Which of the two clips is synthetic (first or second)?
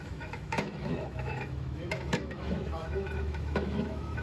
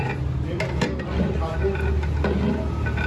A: first